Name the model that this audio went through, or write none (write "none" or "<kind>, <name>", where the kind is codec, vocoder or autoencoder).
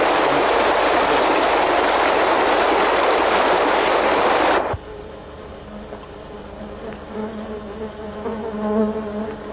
none